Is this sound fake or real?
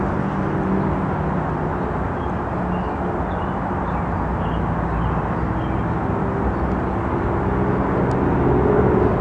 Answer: real